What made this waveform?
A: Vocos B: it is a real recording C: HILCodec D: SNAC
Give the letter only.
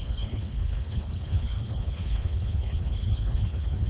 C